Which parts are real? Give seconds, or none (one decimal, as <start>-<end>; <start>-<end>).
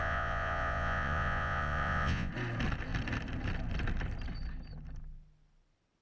2.3-6.0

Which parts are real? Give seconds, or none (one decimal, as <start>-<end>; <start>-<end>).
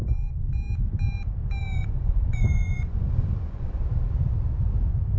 0.0-1.6; 3.8-5.2